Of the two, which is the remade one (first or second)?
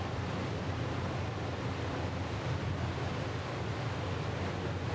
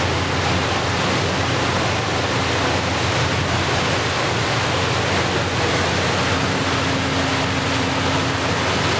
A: first